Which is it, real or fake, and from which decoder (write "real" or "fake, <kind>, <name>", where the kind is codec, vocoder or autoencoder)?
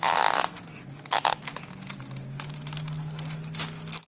real